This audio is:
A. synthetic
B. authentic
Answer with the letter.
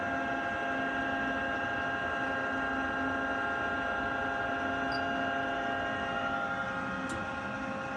B